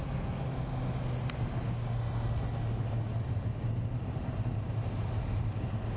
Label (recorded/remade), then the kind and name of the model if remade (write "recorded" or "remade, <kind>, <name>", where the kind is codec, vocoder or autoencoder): recorded